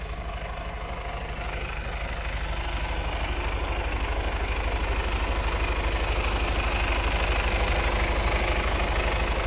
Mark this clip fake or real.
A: real